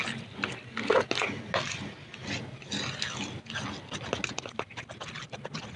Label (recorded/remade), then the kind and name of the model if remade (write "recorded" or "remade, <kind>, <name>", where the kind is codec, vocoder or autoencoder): recorded